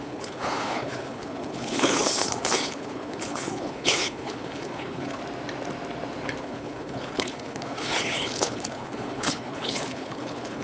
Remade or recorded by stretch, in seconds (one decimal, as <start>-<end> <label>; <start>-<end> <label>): 0.0-5.2 remade; 5.2-6.4 recorded; 6.4-10.6 remade